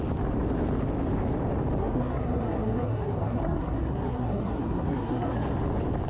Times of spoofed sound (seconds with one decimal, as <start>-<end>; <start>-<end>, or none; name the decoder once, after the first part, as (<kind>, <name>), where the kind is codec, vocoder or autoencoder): 1.8-5.5 (codec, SNAC)